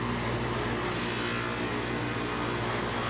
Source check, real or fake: real